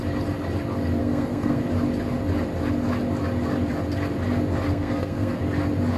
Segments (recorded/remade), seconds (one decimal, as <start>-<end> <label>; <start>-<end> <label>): 0.0-1.0 recorded; 1.0-1.6 remade; 1.6-4.7 recorded; 4.7-5.4 remade; 5.4-6.0 recorded